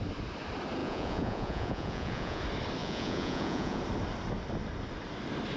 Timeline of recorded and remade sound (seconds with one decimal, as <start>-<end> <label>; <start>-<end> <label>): 0.0-0.8 recorded; 0.8-2.4 remade; 2.4-2.8 recorded; 2.8-3.8 remade; 3.8-5.6 recorded